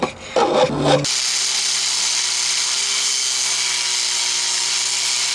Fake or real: real